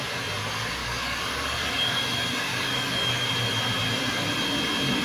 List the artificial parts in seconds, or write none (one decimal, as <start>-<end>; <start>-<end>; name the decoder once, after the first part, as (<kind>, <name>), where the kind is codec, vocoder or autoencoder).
0.8-2.0 (codec, DAC); 2.5-3.3